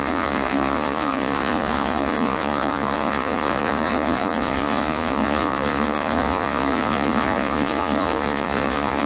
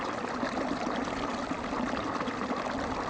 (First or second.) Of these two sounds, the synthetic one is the first